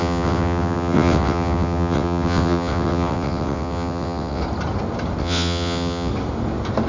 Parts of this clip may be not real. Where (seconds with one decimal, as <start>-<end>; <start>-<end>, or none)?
0.0-4.4; 5.2-6.1